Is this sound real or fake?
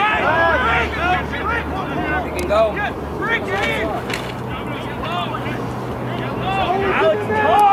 real